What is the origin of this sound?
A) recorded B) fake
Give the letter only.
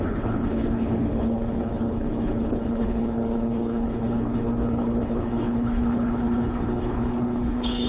B